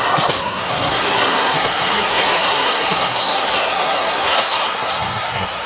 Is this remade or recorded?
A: remade